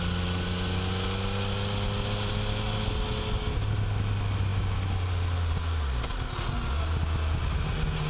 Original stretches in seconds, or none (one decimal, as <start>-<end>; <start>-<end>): 0.0-8.1